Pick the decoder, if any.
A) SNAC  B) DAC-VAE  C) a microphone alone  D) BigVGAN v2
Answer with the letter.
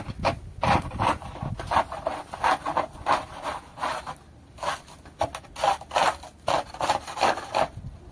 C